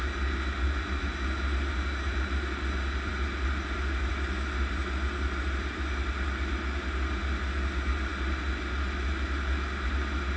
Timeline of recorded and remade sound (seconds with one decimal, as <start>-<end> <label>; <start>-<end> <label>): 0.0-10.4 recorded